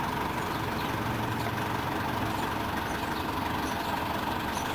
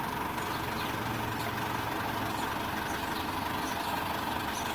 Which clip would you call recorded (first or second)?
second